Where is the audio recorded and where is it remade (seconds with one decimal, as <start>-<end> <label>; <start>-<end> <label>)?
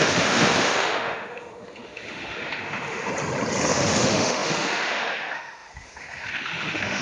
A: 0.0-3.1 remade; 3.1-3.7 recorded; 3.7-7.0 remade